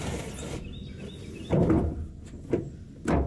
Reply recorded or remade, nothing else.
recorded